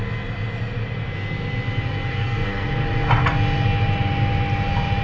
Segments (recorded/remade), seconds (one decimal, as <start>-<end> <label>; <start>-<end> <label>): 0.0-2.1 recorded; 2.1-2.7 remade; 2.7-5.0 recorded